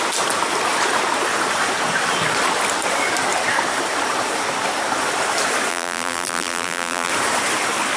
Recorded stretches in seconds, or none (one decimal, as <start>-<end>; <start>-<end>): 0.0-5.7; 7.1-8.0